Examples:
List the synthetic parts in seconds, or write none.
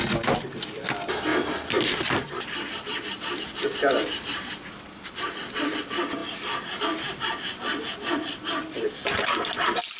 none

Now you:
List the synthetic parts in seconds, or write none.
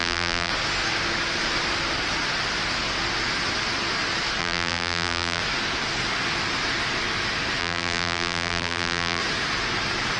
0.0-0.5; 4.4-5.4; 7.6-9.2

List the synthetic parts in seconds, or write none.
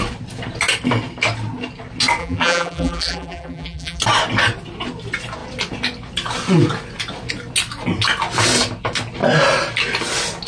2.2-4.0